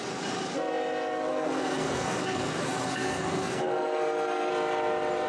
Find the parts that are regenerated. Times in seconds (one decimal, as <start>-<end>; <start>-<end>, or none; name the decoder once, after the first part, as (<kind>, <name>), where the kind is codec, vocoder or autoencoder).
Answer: 1.3-4.5 (codec, SNAC)